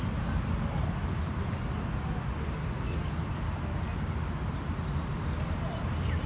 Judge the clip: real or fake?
real